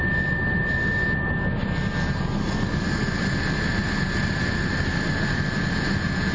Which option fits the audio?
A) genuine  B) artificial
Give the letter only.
A